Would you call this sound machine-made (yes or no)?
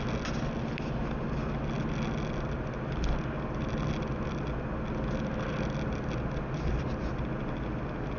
no